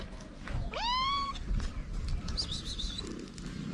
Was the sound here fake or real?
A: real